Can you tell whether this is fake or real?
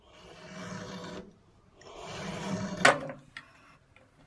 real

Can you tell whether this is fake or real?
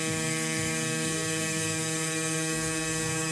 fake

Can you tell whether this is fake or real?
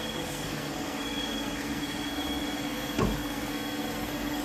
fake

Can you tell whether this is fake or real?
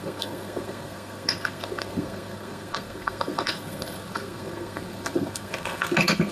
fake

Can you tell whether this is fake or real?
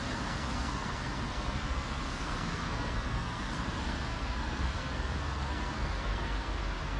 fake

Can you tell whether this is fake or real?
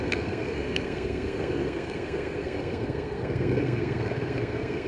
fake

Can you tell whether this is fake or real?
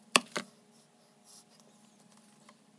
real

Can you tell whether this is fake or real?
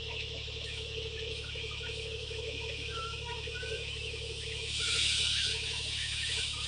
fake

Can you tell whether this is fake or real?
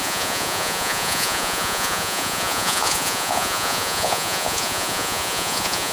fake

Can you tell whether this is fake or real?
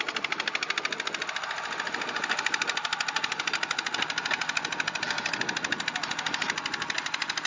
real